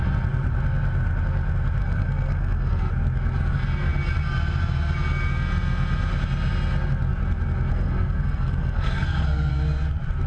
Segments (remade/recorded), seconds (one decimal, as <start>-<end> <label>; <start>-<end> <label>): 0.0-1.8 recorded; 1.8-2.9 remade; 2.9-7.7 recorded; 7.7-9.5 remade; 9.5-10.3 recorded